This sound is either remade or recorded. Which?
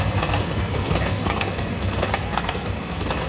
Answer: remade